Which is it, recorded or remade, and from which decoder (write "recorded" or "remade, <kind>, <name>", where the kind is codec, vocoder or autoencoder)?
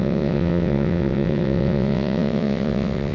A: remade, vocoder, WaveNeXt